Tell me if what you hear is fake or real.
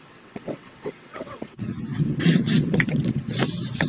fake